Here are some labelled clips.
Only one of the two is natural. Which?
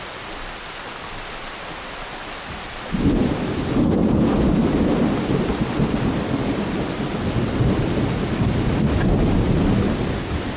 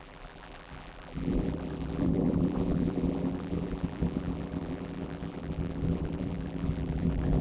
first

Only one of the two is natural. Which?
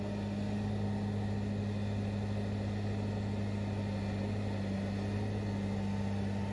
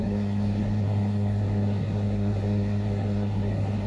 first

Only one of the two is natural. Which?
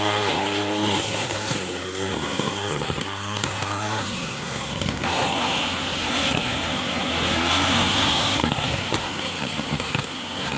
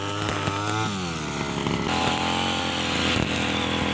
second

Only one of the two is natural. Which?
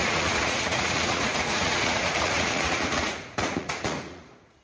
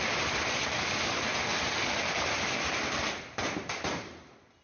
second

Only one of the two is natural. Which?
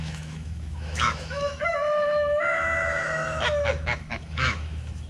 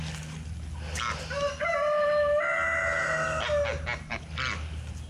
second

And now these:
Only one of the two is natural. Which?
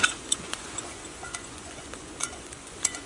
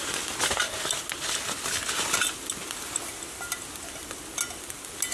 second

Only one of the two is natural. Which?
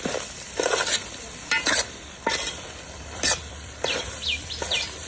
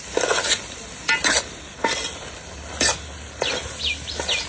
second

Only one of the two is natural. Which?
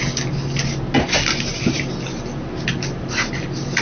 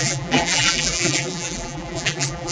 first